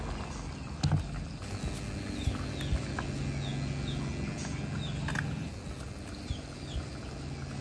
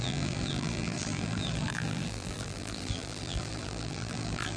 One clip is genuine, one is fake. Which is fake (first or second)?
second